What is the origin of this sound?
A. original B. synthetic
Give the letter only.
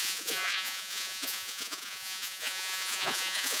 B